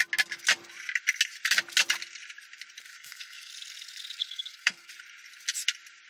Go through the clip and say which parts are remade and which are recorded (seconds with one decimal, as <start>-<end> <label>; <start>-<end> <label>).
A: 0.0-2.9 recorded; 2.9-3.5 remade; 3.5-4.2 recorded; 4.2-4.9 remade; 4.9-6.1 recorded